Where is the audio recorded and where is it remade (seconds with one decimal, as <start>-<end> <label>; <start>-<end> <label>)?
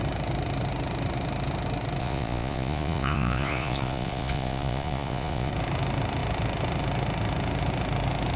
0.0-2.0 recorded; 2.0-5.5 remade; 5.5-8.4 recorded